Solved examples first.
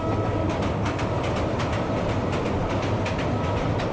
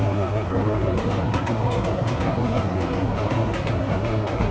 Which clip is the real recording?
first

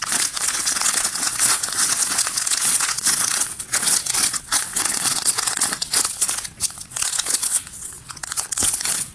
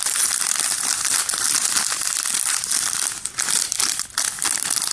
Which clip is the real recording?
second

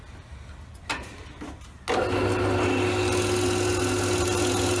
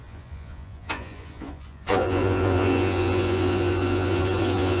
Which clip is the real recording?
first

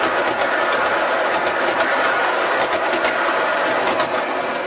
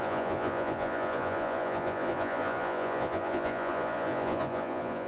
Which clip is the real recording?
first